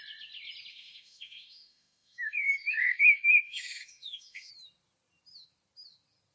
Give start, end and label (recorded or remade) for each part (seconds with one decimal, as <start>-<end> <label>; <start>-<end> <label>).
0.0-0.7 recorded; 0.7-4.5 remade; 4.5-6.3 recorded